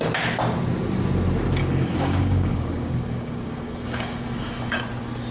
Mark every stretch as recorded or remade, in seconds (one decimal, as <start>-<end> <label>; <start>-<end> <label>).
0.0-1.6 recorded; 1.6-4.8 remade; 4.8-5.3 recorded